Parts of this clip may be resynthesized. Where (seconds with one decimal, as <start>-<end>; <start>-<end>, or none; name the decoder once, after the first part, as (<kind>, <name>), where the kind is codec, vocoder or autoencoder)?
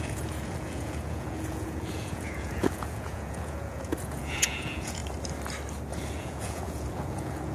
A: 0.0-5.0 (vocoder, Vocos); 6.1-7.5